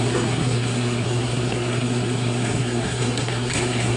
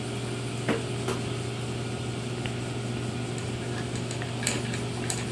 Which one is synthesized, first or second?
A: first